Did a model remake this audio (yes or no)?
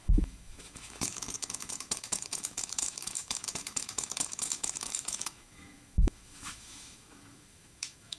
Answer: yes